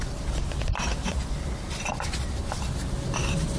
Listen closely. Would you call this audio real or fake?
real